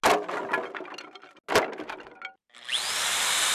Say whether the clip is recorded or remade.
recorded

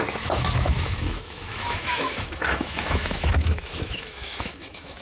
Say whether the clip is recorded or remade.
remade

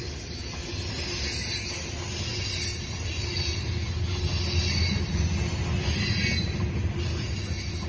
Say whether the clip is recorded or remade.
recorded